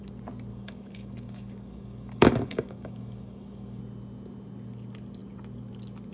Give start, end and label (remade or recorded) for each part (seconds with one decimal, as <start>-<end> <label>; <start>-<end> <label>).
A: 0.0-0.5 recorded; 0.5-3.8 remade; 3.8-6.1 recorded